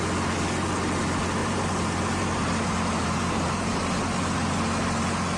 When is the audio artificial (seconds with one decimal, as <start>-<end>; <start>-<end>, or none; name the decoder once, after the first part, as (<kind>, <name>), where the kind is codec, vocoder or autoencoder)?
1.4-4.6 (vocoder, BigVGAN v2)